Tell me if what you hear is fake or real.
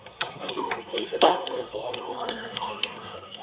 fake